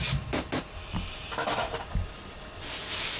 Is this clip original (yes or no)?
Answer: yes